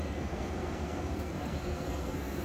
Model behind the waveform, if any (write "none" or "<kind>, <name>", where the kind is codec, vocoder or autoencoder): codec, SNAC